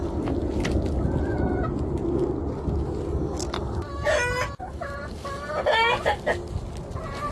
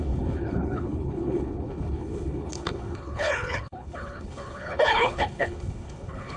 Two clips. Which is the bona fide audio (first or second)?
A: first